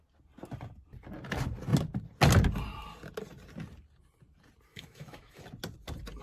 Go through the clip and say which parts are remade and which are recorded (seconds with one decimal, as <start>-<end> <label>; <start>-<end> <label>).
0.0-4.7 recorded; 4.7-5.4 remade; 5.4-6.2 recorded